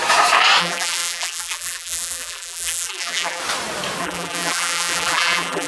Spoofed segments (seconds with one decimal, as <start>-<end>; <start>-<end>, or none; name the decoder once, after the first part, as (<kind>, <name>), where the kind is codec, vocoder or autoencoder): 0.6-3.4 (vocoder, BigVGAN v2); 4.0-5.7